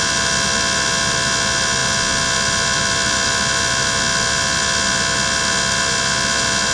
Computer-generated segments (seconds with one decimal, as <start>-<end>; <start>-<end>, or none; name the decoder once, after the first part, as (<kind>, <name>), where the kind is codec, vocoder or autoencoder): none